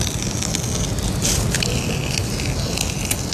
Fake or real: real